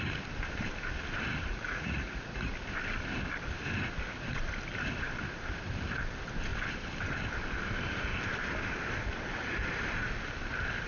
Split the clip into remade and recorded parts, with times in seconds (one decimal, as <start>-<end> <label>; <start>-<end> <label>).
0.0-1.5 recorded; 1.5-2.5 remade; 2.5-10.9 recorded